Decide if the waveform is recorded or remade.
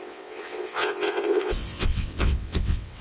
remade